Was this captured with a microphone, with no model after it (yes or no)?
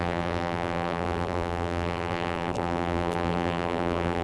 no